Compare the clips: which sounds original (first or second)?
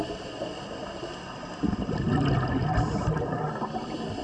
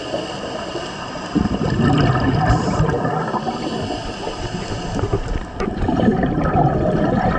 first